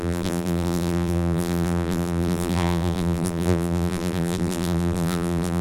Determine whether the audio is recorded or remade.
remade